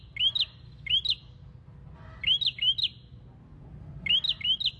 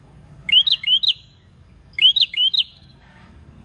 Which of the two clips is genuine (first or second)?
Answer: first